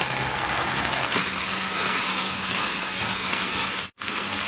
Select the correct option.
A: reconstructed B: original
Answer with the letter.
A